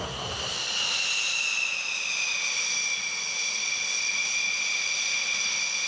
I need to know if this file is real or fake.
real